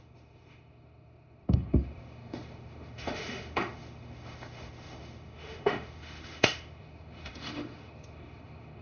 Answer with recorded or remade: remade